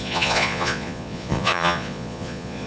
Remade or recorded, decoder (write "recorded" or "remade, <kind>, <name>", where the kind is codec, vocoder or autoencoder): remade, vocoder, Vocos